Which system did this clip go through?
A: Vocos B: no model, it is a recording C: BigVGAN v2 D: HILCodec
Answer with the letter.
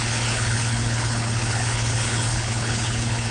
D